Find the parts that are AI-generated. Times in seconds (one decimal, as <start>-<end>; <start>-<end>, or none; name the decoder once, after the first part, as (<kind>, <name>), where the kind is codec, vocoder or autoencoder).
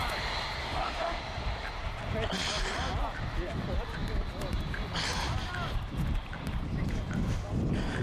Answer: 0.6-1.2 (autoencoder, DAC-VAE)